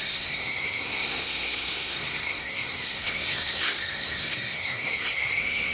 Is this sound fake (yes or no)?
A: yes